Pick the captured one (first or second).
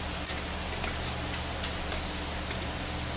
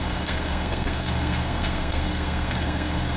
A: first